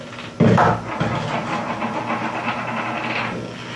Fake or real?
real